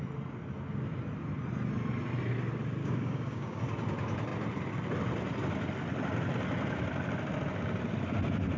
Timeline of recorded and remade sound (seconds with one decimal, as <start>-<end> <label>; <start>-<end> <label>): 0.0-2.8 recorded; 2.8-3.6 remade; 3.6-8.6 recorded